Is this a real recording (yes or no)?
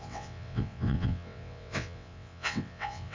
no